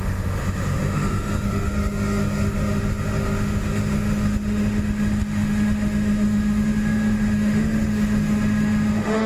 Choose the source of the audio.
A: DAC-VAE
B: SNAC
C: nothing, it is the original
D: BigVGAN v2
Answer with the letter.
A